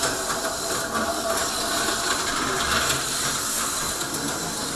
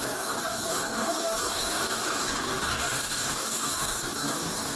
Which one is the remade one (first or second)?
second